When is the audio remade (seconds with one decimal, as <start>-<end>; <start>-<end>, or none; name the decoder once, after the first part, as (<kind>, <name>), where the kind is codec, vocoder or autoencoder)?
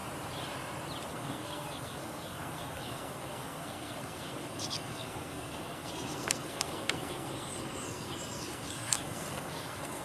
1.1-10.0 (codec, SNAC)